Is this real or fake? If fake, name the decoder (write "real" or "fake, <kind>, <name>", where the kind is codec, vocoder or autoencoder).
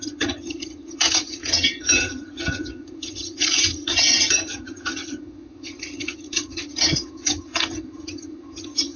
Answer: fake, vocoder, HiFi-GAN